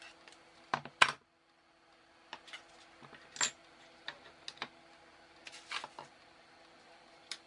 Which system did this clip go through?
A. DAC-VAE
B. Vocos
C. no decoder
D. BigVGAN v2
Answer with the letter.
C